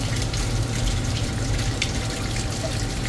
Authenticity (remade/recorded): recorded